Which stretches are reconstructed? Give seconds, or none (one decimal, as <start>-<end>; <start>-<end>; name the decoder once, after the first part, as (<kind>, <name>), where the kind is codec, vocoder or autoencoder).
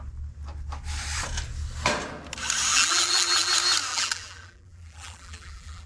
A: 2.7-3.5 (vocoder, BigVGAN v2); 3.9-5.9